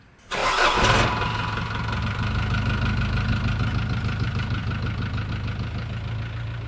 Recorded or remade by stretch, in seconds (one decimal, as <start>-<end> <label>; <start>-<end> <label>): 0.0-6.7 recorded